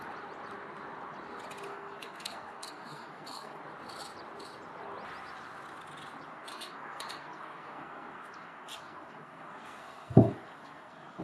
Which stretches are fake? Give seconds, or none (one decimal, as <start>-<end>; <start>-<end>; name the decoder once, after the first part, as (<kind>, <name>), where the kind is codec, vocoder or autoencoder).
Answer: 1.7-3.6 (codec, SNAC); 6.3-11.2